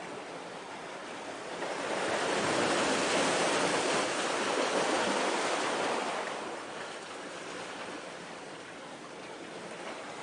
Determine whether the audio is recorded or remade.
remade